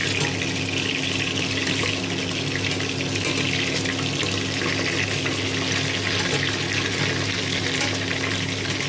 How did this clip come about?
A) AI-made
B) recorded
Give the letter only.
B